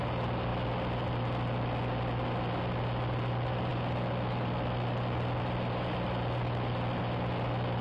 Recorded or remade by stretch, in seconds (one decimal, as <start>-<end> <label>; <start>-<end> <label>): 0.0-7.8 recorded